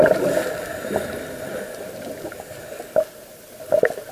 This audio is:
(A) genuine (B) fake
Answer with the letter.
A